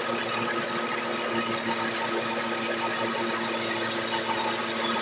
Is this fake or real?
real